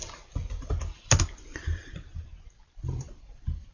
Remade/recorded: remade